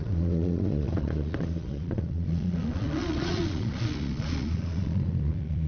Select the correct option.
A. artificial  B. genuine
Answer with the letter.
A